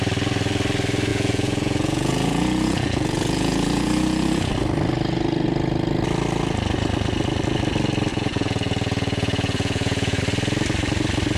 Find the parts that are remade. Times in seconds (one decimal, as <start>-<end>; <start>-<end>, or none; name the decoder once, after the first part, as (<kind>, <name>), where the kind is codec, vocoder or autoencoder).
1.1-4.5 (vocoder, Vocos); 8.1-10.2